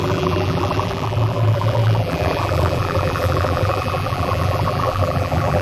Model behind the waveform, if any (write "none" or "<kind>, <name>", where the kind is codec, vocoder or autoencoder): vocoder, BigVGAN v2